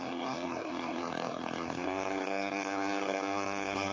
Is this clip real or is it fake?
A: fake